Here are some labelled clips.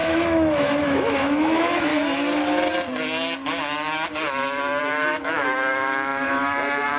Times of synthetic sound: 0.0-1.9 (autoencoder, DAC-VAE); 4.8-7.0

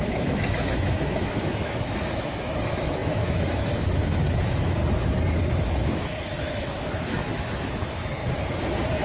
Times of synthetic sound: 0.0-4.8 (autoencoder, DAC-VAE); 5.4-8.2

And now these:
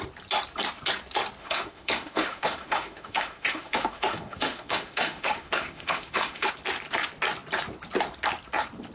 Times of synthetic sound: 1.4-6.5 (autoencoder, DAC-VAE)

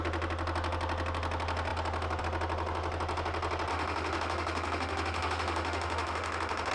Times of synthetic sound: 3.7-6.7 (autoencoder, DAC-VAE)

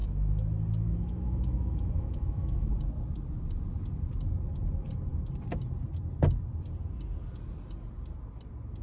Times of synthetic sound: 0.0-2.7 (autoencoder, DAC-VAE)